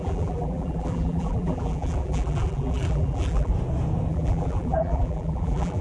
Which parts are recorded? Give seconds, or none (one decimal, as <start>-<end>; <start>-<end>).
3.5-4.1